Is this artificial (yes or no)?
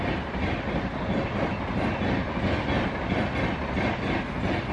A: no